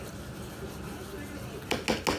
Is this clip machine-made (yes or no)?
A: no